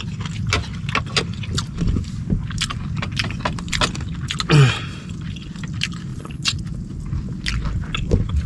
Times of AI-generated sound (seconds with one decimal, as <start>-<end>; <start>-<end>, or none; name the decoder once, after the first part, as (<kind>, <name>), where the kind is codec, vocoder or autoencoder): 6.1-6.6 (vocoder, Vocos)